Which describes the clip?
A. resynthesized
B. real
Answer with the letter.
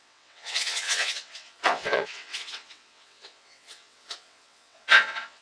A